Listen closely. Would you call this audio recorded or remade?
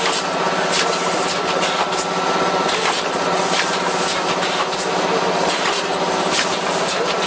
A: recorded